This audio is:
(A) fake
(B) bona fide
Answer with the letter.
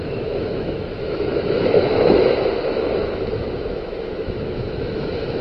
A